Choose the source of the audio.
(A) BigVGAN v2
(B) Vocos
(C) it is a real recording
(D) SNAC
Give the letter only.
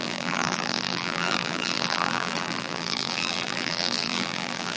A